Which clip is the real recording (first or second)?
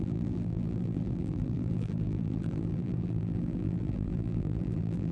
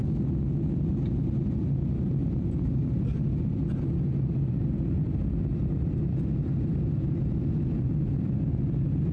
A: second